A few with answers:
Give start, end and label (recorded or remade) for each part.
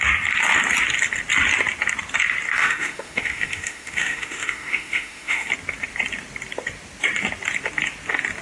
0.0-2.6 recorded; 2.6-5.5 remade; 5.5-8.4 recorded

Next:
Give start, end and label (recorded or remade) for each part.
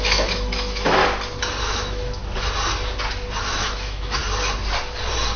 0.0-1.0 remade; 1.0-1.6 recorded; 1.6-2.2 remade; 2.2-3.4 recorded; 3.4-4.2 remade; 4.2-5.4 recorded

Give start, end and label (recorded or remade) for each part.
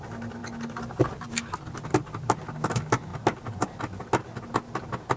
0.0-5.2 recorded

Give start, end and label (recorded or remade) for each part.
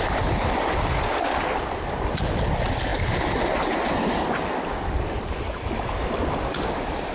0.0-7.1 recorded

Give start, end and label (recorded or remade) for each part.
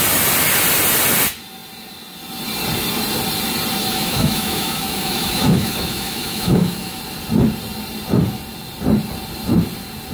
0.0-3.8 recorded; 3.8-7.0 remade; 7.0-10.1 recorded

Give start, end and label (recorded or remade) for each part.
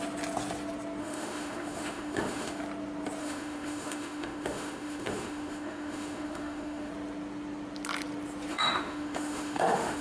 0.0-1.0 recorded; 1.0-2.6 remade; 2.6-3.2 recorded; 3.2-6.9 remade; 6.9-8.5 recorded; 8.5-10.0 remade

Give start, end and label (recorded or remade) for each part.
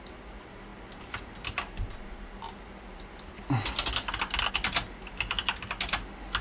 0.0-6.4 recorded